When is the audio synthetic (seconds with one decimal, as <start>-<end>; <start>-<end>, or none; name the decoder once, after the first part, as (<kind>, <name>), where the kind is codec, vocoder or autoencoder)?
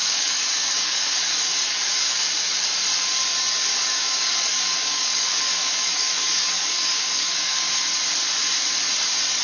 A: 0.0-2.4 (codec, DAC); 3.7-7.7